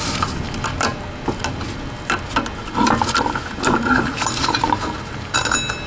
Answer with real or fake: real